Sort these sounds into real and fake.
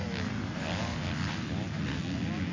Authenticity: real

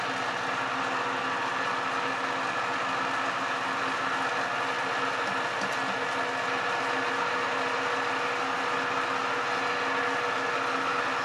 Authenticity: real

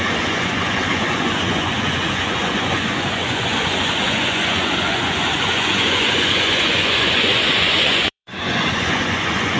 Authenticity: fake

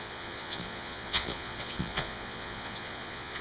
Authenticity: fake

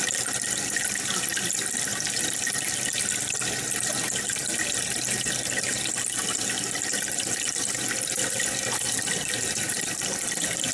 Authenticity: real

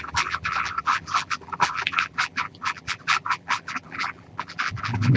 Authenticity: fake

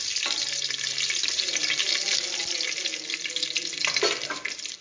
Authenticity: real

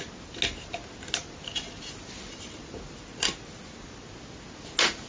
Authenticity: real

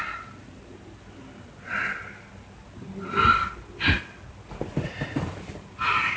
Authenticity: real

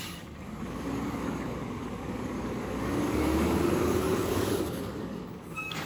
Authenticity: fake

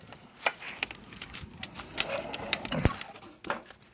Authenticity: fake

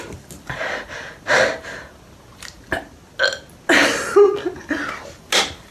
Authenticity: real